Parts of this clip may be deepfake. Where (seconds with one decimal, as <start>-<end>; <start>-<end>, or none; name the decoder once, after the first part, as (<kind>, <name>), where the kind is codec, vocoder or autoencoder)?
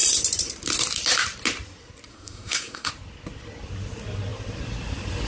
2.1-2.9 (codec, SNAC)